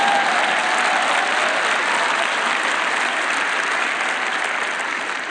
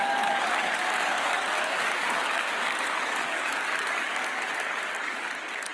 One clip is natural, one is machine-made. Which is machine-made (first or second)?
second